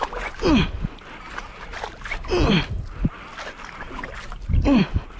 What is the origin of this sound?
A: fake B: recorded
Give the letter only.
B